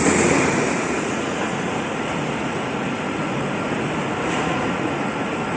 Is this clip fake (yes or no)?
yes